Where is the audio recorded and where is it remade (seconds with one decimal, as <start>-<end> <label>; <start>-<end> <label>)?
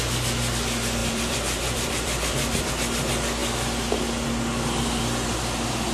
0.0-1.0 recorded; 1.0-2.7 remade; 2.7-5.9 recorded